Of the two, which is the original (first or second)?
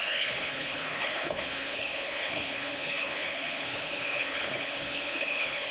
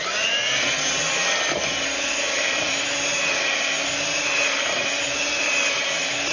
second